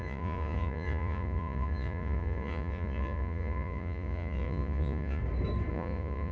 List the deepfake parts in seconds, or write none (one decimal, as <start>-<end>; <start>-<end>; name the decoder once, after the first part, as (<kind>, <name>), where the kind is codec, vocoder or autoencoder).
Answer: 0.0-5.2 (vocoder, Vocos); 5.7-6.3